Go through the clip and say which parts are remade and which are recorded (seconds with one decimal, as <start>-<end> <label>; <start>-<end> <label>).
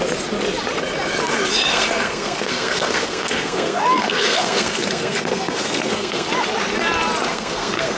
0.0-1.7 recorded; 1.7-6.3 remade; 6.3-7.3 recorded; 7.3-8.0 remade